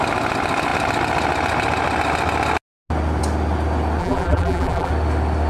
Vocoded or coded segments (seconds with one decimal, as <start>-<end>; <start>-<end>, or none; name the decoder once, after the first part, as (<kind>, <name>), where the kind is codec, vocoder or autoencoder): 4.0-4.9 (vocoder, BigVGAN v2)